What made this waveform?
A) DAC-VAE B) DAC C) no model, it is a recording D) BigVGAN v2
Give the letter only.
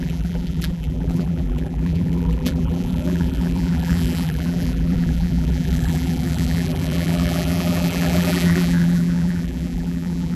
D